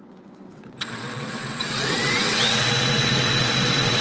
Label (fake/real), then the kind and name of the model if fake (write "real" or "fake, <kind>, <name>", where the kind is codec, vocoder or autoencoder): fake, vocoder, WaveNeXt